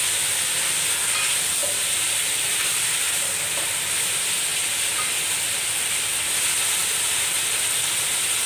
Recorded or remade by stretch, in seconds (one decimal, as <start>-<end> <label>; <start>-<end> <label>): 0.0-1.6 recorded; 1.6-3.4 remade; 3.4-8.5 recorded

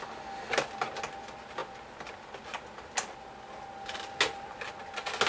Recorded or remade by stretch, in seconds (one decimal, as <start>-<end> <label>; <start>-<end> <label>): 0.0-5.3 recorded

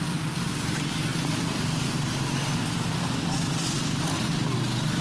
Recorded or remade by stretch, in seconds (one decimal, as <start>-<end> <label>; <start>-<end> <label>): 0.0-1.1 recorded; 1.1-4.0 remade; 4.0-5.0 recorded

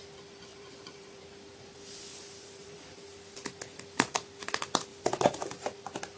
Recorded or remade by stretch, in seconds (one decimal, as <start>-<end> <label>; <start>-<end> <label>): 0.0-0.5 recorded; 0.5-1.2 remade; 1.2-2.1 recorded; 2.1-3.0 remade; 3.0-6.2 recorded